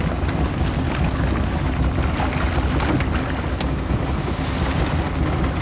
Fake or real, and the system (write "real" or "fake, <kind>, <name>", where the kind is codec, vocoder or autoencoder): real